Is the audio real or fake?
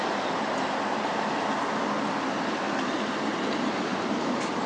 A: real